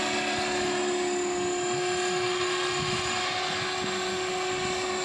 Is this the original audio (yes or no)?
yes